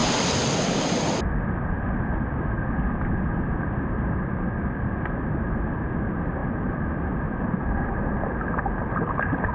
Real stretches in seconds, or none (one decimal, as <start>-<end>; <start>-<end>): 0.0-9.5